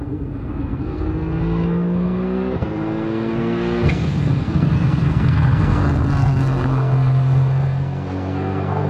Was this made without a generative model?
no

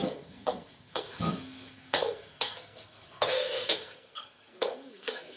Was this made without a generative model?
no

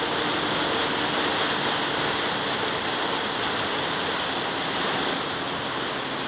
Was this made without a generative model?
yes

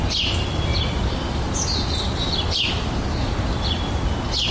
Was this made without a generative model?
yes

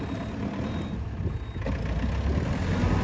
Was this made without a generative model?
yes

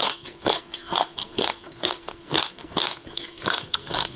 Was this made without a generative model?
no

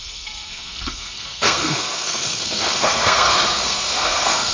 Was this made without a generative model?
no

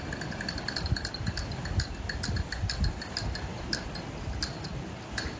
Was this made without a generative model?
yes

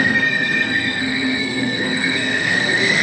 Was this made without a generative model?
no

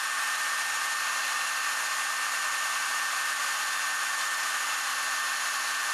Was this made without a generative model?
yes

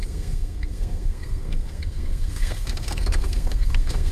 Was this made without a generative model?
no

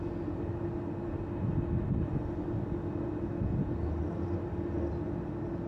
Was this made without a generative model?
yes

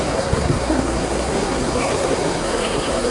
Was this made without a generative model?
no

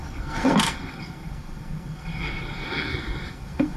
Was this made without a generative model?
no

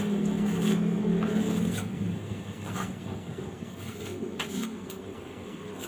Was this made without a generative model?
no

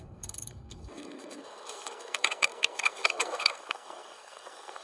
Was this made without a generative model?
no